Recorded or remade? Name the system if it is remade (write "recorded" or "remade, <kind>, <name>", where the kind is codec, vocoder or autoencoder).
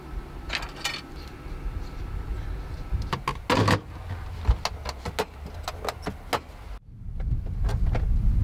recorded